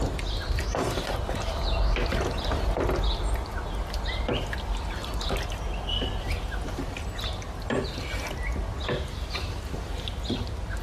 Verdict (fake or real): real